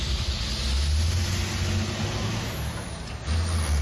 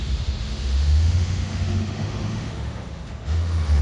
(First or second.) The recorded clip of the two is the first